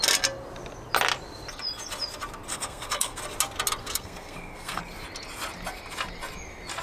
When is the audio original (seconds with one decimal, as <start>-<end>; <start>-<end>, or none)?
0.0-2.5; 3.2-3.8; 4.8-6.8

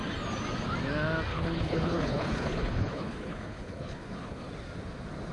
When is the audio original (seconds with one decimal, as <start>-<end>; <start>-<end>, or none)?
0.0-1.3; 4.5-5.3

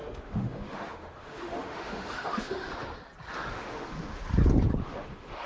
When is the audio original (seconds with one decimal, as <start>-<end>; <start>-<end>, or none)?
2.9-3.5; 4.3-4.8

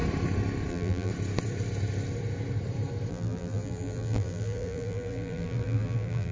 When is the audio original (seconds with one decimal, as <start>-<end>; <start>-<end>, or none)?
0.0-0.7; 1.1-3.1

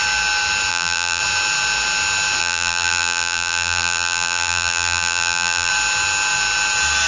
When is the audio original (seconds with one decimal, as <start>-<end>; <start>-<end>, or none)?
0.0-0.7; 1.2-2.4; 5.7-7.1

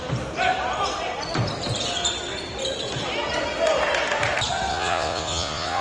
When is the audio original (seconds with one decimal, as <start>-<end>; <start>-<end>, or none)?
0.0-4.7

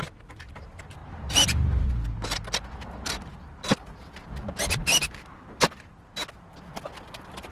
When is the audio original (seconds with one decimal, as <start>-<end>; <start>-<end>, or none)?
0.0-7.5

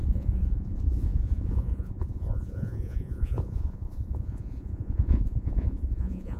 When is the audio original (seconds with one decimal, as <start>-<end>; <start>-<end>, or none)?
none